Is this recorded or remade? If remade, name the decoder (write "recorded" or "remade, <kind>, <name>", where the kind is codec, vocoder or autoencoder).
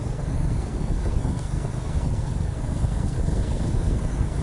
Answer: remade, codec, SNAC